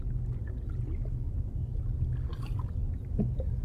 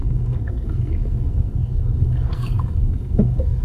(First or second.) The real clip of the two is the first